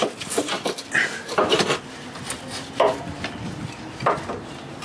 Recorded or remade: recorded